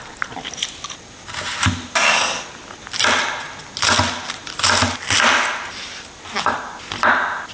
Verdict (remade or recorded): recorded